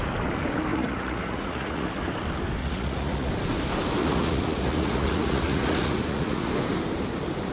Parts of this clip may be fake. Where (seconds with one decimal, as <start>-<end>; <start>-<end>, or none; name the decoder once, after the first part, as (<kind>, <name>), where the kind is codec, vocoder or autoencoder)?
0.7-1.9 (vocoder, Vocos); 2.6-3.3; 4.0-6.5